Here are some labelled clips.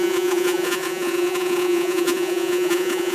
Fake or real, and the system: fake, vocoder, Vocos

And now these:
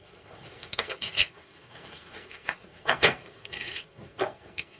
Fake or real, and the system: fake, codec, SNAC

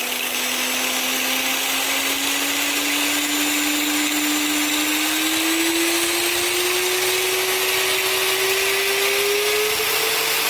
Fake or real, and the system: real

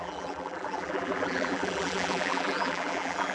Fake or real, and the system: fake, vocoder, BigVGAN v2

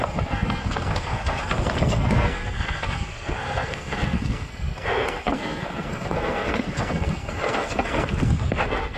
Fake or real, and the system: fake, codec, SNAC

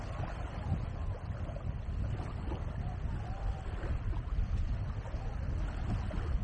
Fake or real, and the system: real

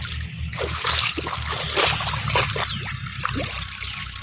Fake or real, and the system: real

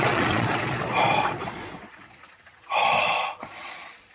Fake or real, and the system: fake, vocoder, Vocos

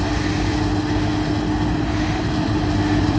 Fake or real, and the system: real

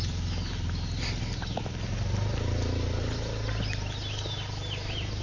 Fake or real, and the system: real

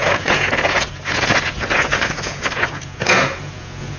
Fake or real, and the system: fake, vocoder, Vocos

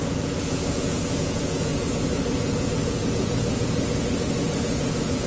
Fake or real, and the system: fake, vocoder, Vocos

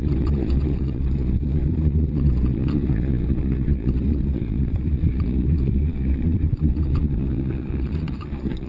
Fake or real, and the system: fake, vocoder, Vocos